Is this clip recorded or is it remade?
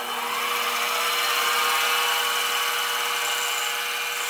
recorded